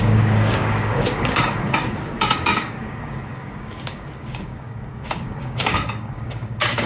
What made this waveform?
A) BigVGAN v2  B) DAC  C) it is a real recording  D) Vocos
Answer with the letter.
B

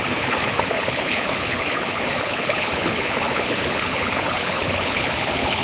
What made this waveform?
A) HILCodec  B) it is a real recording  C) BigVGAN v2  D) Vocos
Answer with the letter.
A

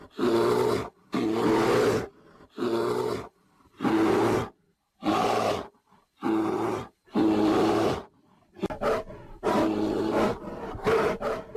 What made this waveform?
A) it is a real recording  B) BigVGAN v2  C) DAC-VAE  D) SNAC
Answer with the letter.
A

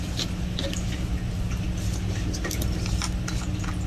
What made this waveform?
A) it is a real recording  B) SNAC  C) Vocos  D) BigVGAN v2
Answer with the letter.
A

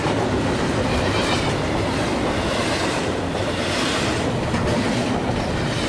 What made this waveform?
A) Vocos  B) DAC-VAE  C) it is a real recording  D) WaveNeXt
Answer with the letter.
C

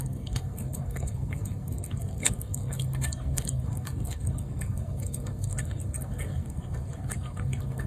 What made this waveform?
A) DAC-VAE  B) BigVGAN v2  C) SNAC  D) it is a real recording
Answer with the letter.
C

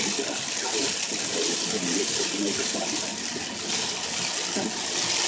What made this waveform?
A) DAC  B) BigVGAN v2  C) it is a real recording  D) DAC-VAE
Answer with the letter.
C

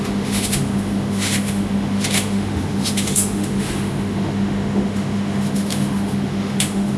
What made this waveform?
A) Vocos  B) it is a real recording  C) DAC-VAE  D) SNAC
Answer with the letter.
C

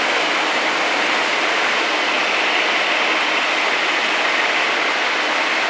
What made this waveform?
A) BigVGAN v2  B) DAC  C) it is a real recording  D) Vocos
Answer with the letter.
C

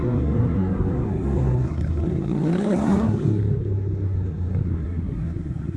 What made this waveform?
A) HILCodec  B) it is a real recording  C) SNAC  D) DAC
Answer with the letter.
C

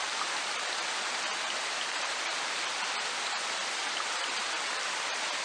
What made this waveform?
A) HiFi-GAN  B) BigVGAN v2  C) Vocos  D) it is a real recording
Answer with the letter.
B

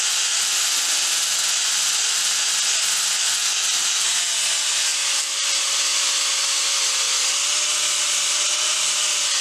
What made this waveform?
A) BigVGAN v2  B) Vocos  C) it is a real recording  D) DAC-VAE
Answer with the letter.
C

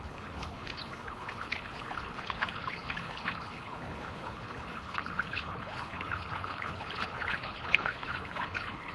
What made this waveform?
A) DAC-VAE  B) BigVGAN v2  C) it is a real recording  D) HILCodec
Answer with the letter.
D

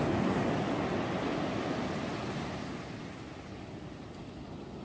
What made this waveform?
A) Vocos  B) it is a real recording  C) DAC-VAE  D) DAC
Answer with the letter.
B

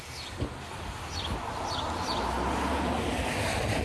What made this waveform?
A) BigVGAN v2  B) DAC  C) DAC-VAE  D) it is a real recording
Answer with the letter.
D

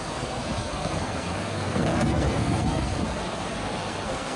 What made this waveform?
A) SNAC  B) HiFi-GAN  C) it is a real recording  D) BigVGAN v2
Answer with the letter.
A